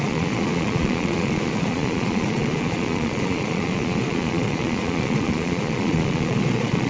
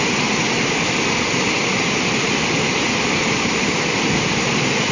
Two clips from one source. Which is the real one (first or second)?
second